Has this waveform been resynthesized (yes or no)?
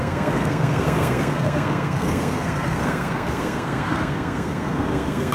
yes